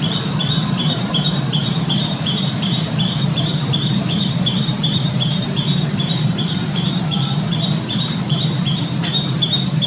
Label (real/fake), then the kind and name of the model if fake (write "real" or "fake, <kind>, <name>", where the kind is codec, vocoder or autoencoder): fake, vocoder, BigVGAN v2